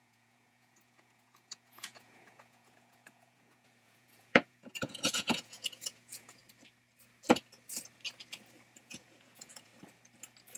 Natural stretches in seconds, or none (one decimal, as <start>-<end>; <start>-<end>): 6.4-8.8; 9.7-10.6